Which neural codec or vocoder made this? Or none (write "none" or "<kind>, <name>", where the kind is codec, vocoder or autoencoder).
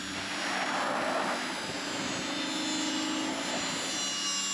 none